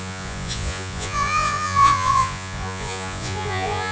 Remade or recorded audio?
remade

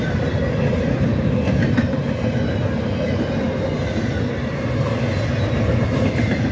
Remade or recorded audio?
recorded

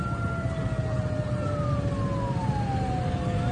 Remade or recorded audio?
recorded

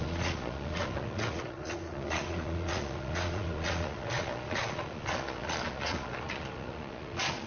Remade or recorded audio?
remade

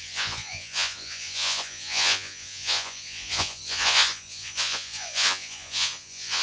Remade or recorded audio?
remade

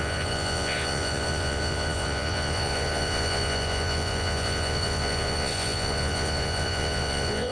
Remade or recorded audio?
remade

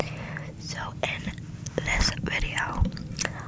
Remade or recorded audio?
recorded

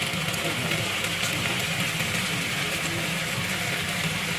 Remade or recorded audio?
recorded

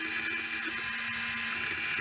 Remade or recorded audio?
recorded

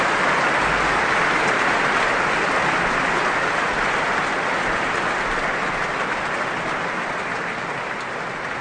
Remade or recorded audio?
recorded